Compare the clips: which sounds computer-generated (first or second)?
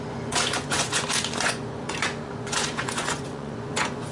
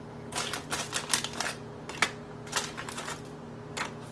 first